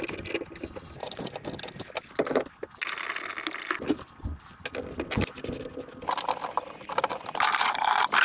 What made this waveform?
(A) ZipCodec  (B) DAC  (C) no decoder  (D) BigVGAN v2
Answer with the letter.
C